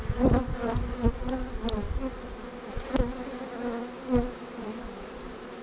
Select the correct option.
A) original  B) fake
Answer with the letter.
A